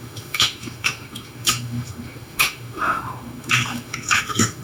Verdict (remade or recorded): remade